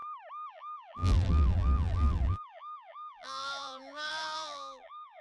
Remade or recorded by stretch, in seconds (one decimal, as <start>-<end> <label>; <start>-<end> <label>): 0.0-0.5 recorded; 0.5-5.2 remade